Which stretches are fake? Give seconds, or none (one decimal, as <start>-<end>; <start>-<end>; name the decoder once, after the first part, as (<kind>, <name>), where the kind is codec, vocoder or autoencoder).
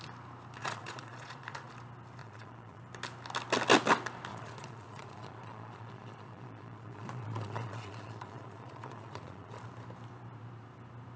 0.6-1.7 (vocoder, Vocos); 2.2-2.8; 4.3-9.6